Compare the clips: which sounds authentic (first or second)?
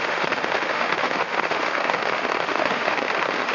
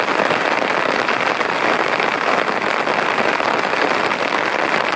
second